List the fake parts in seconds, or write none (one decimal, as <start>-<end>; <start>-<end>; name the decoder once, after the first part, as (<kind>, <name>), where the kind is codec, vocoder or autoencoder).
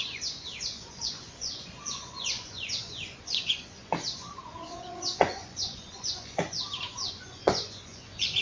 0.0-8.4 (vocoder, Vocos)